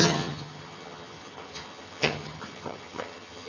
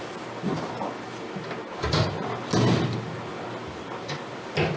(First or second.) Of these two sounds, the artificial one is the first